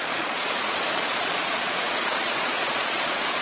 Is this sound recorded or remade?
remade